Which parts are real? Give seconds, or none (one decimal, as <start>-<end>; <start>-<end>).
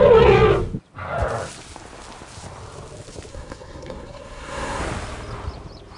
0.0-3.3; 4.8-6.0